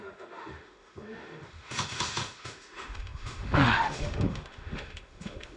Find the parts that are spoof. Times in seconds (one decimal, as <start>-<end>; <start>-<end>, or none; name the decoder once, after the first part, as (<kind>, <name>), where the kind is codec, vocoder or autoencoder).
0.0-5.6 (autoencoder, DAC-VAE)